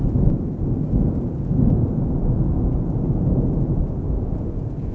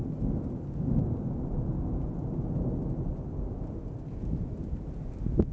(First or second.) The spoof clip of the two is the first